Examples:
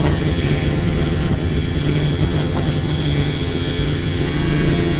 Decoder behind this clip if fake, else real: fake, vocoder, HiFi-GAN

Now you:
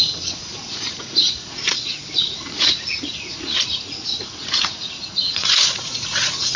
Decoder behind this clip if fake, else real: fake, vocoder, Vocos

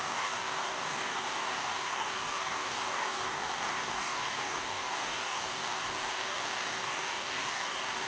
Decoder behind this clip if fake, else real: fake, codec, DAC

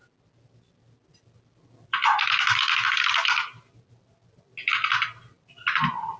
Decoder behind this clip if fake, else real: real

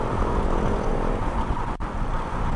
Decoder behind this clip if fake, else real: fake, vocoder, Vocos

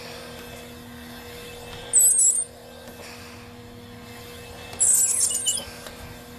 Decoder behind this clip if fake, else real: real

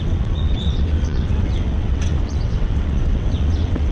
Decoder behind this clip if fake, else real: fake, vocoder, WaveNeXt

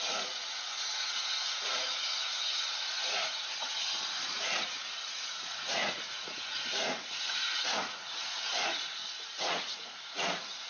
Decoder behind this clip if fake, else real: fake, vocoder, Vocos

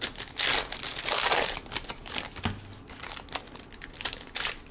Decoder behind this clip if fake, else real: real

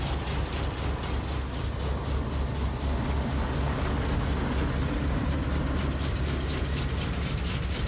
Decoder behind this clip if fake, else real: real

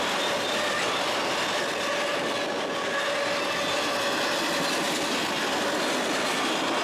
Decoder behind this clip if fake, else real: real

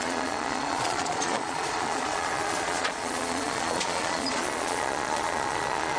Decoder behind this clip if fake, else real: fake, vocoder, Vocos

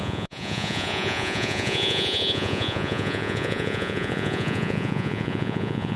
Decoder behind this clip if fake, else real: fake, vocoder, Vocos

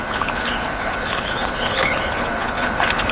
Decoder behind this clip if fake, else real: fake, codec, HILCodec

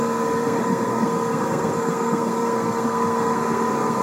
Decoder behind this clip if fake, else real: fake, codec, SNAC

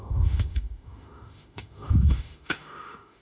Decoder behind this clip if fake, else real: fake, autoencoder, DAC-VAE